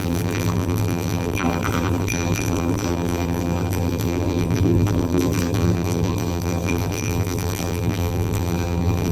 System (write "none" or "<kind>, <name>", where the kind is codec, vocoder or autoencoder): vocoder, BigVGAN v2